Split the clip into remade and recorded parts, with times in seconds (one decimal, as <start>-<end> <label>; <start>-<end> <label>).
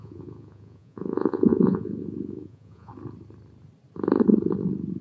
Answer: 0.0-2.9 remade; 2.9-5.0 recorded